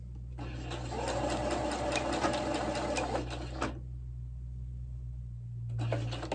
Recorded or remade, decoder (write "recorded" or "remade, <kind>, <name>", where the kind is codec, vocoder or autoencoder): recorded